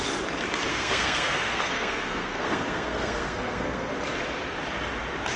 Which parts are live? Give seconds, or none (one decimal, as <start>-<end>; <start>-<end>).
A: 0.0-0.7; 3.9-5.4